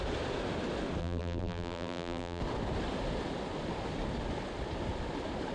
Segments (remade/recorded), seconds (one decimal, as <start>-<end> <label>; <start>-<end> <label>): 0.0-1.0 recorded; 1.0-2.4 remade; 2.4-5.5 recorded